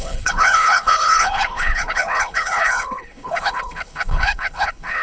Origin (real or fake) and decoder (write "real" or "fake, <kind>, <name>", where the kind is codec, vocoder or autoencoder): fake, codec, HILCodec